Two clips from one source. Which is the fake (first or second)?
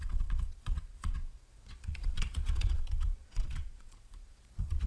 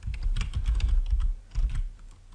first